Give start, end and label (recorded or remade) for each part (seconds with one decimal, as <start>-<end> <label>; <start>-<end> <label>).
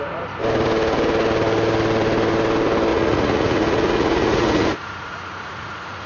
0.0-2.9 recorded; 2.9-6.1 remade